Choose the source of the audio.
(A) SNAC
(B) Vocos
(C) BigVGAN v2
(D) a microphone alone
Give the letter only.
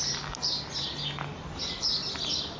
D